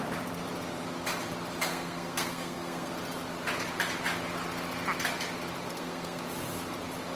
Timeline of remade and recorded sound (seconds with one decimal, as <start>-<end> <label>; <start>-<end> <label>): 0.0-1.7 recorded; 1.7-2.9 remade; 2.9-5.7 recorded; 5.7-6.2 remade; 6.2-7.2 recorded